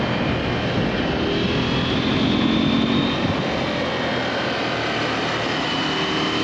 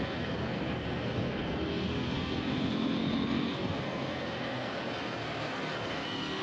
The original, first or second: first